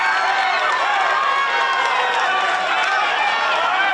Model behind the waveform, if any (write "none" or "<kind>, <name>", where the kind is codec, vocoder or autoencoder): none